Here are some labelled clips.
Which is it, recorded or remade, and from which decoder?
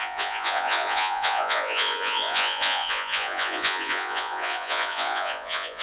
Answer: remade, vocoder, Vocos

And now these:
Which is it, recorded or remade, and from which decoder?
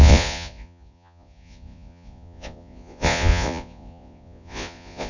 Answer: remade, vocoder, Vocos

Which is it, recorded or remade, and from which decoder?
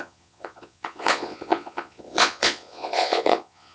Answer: remade, vocoder, Vocos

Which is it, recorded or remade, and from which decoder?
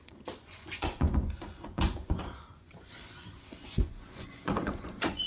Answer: remade, vocoder, Vocos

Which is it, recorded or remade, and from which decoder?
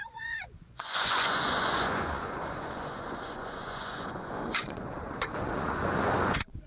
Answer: remade, vocoder, Vocos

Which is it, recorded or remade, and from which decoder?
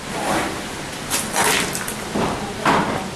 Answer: recorded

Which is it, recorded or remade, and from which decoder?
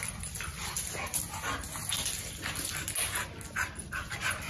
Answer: recorded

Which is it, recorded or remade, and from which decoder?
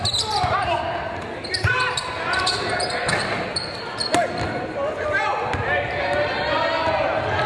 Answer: recorded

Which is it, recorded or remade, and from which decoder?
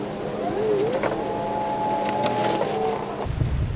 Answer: recorded